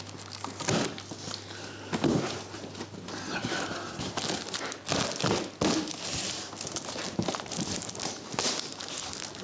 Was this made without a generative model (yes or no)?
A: yes